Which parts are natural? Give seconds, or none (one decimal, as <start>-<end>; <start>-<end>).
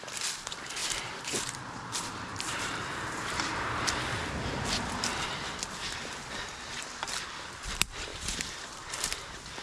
0.0-0.8; 3.9-8.1; 9.0-9.6